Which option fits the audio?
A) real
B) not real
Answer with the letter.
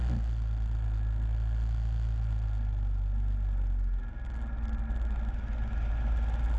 A